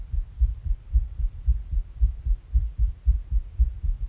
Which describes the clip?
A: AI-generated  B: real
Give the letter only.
A